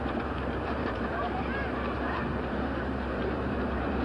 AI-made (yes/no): yes